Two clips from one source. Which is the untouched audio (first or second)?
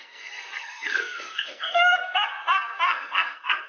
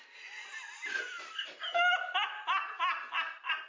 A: second